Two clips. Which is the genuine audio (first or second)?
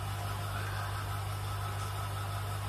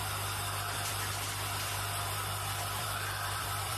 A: first